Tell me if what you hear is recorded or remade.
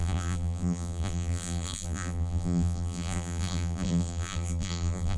remade